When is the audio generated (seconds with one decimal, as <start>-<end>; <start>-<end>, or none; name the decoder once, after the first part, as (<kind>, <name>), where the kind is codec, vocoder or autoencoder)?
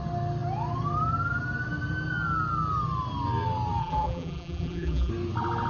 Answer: 3.8-5.1 (vocoder, BigVGAN v2)